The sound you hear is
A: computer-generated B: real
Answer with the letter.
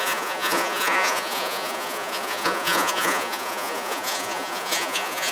A